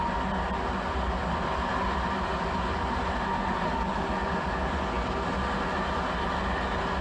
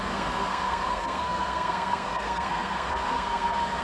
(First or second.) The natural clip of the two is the first